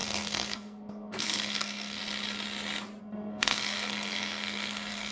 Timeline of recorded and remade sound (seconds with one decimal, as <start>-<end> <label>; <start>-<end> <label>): 0.0-2.0 remade; 2.0-3.0 recorded; 3.0-5.1 remade